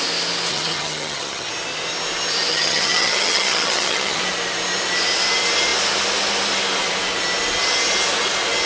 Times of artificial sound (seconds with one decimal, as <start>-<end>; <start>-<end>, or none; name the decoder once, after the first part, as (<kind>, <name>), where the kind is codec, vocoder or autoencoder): 0.5-1.5 (vocoder, HiFi-GAN); 2.5-4.2